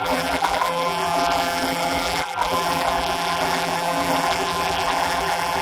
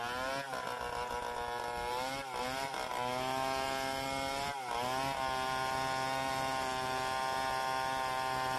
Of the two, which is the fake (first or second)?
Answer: first